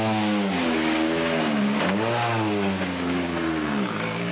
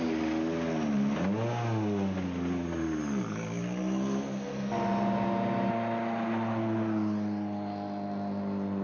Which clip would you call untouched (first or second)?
second